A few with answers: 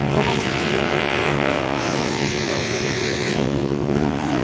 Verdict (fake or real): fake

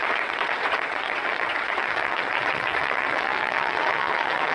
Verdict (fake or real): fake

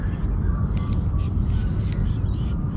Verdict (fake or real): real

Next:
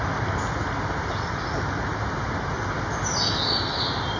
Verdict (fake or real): real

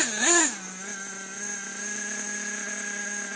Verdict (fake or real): real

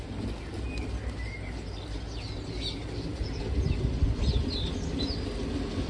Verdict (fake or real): real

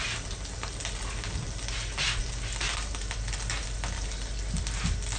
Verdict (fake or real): real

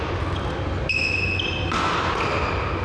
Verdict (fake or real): real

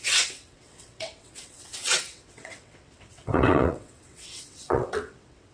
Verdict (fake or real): fake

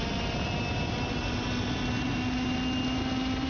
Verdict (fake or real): real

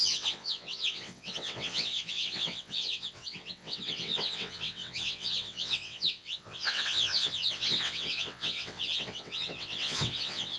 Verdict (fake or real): fake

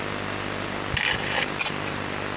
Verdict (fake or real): real